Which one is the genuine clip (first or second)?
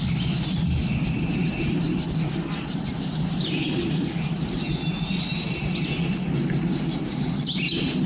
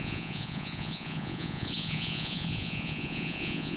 first